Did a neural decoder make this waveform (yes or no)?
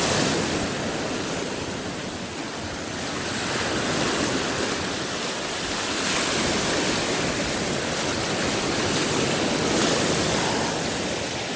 no